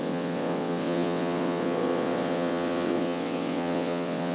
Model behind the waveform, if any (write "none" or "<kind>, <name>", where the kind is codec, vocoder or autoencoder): vocoder, WaveNeXt